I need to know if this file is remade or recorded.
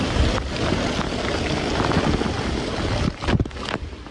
recorded